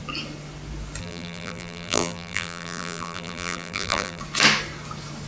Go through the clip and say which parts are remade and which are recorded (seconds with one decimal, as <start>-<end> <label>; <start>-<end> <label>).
0.0-1.0 recorded; 1.0-4.2 remade; 4.2-5.3 recorded